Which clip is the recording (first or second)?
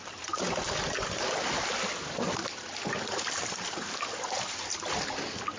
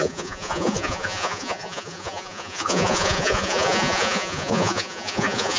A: first